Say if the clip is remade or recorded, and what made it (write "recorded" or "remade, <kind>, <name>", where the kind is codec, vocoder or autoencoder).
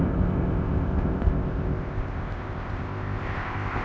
remade, codec, ZipCodec